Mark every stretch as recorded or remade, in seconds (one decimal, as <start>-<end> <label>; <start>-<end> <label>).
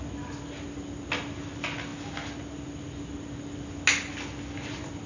0.0-5.1 recorded